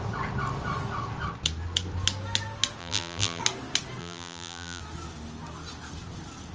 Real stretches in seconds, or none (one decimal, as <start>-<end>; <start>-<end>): 0.0-2.8; 3.4-4.0; 4.8-6.5